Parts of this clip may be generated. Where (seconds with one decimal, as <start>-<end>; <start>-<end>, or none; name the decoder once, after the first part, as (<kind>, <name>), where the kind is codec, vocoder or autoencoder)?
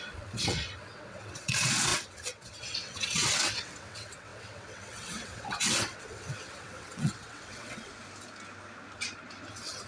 0.0-7.9 (vocoder, WaveNeXt); 9.5-9.9